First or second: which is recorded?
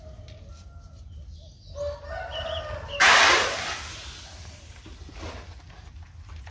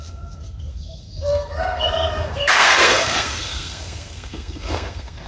first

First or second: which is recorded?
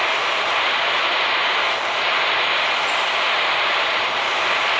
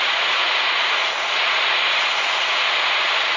first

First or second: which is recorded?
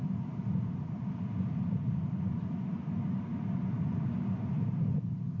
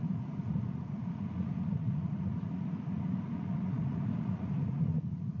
first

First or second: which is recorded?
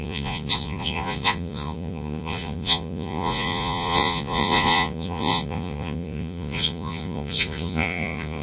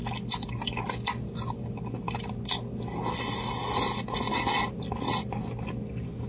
second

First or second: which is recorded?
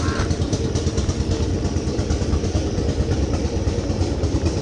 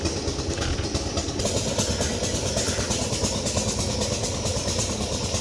second